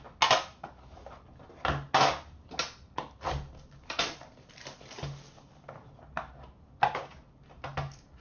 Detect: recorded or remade recorded